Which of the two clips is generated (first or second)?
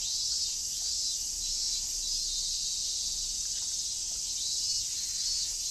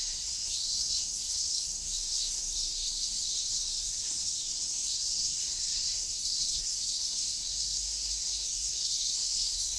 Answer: second